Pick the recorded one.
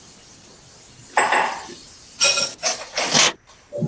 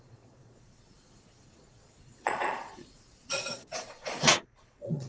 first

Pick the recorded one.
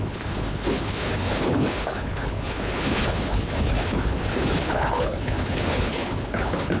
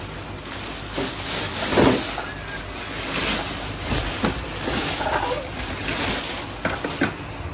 second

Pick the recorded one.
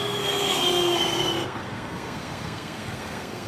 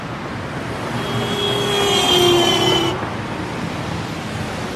second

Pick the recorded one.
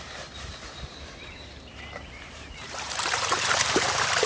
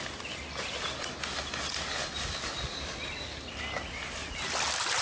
second